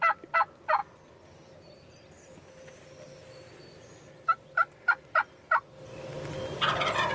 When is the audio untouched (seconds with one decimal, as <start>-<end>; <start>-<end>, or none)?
0.0-7.1